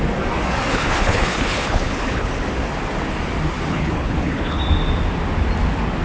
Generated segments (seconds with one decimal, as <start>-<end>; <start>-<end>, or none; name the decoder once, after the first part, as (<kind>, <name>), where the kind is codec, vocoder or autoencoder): 0.7-2.3 (codec, HILCodec); 3.7-4.6